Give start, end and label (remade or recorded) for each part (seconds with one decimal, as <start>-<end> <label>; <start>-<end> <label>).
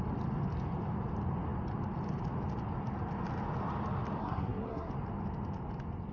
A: 0.0-4.2 recorded; 4.2-4.9 remade; 4.9-6.1 recorded